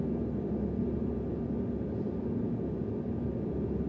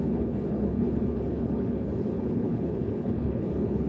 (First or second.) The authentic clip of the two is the first